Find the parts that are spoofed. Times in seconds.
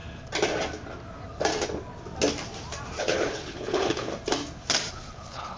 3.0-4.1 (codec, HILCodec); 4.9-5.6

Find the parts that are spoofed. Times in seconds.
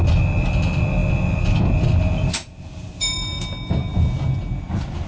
none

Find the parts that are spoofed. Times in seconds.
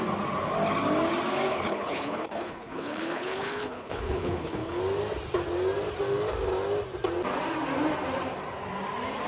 1.5-4.8 (codec, HILCodec)